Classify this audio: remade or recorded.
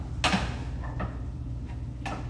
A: recorded